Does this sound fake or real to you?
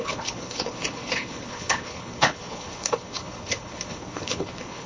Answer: fake